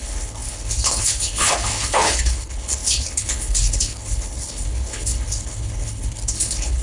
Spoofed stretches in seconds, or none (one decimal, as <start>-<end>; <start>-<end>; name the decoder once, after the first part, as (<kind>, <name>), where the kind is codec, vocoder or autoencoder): 0.0-6.8 (codec, HILCodec)